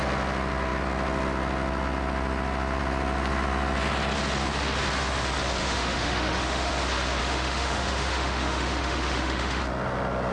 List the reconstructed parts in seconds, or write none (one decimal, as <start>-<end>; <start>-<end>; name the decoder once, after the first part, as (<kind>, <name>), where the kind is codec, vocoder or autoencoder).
5.6-6.7 (autoencoder, DAC-VAE); 7.2-9.6